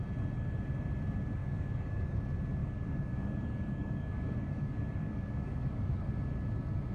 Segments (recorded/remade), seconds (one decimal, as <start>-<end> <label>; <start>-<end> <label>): 0.0-1.4 recorded; 1.4-2.2 remade; 2.2-2.6 recorded; 2.6-6.0 remade; 6.0-6.9 recorded

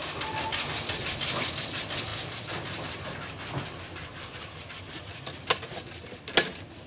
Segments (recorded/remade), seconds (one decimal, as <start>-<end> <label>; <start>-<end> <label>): 0.0-6.9 recorded

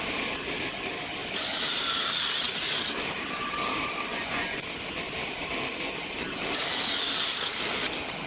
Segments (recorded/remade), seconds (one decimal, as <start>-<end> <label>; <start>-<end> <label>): 0.0-4.1 recorded; 4.1-4.6 remade; 4.6-8.3 recorded

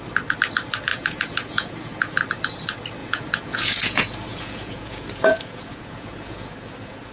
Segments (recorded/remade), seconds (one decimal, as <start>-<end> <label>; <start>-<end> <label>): 0.0-0.9 recorded; 0.9-2.2 remade; 2.2-3.0 recorded; 3.0-7.1 remade

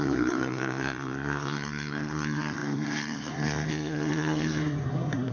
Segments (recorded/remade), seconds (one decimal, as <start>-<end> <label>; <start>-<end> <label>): 0.0-5.3 remade

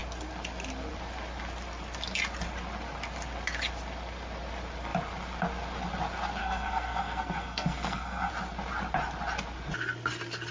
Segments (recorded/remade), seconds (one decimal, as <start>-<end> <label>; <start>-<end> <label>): 0.0-6.4 recorded; 6.4-8.3 remade; 8.3-10.5 recorded

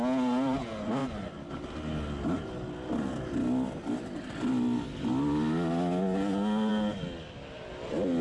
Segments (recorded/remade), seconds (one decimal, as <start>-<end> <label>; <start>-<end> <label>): 0.0-8.2 recorded